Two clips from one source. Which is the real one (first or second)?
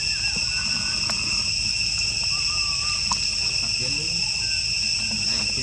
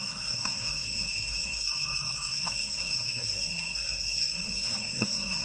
first